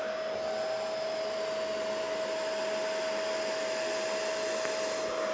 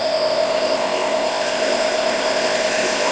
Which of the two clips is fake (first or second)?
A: second